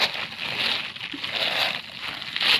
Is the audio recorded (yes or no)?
yes